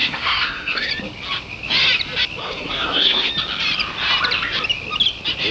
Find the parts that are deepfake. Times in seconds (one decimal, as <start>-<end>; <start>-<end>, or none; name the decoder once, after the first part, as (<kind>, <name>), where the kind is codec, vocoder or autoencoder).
0.0-0.9 (codec, SNAC); 2.4-3.3